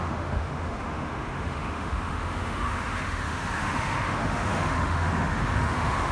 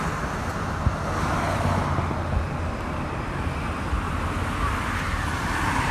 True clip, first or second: second